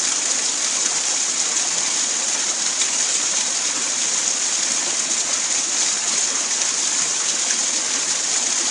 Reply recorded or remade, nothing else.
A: recorded